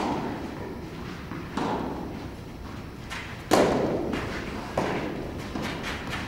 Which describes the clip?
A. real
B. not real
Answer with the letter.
A